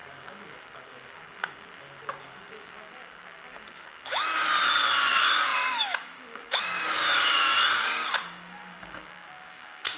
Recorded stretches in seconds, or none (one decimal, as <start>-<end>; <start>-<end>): none